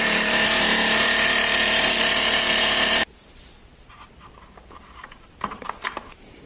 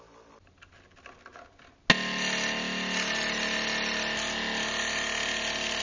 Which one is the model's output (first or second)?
first